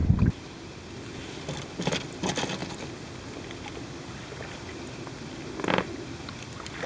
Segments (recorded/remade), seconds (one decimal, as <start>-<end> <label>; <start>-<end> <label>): 0.0-6.9 recorded